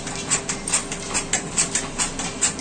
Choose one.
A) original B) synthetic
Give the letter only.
A